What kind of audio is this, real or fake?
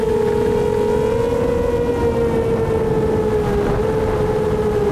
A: real